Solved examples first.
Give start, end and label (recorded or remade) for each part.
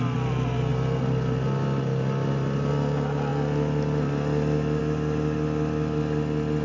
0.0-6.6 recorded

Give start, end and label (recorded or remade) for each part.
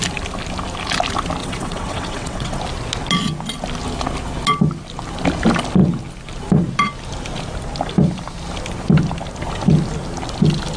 0.0-1.4 recorded; 1.4-2.6 remade; 2.6-10.8 recorded